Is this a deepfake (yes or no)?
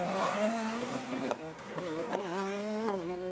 yes